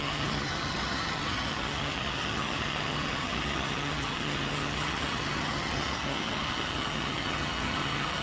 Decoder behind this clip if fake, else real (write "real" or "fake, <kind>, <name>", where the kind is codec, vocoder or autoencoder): fake, vocoder, HiFi-GAN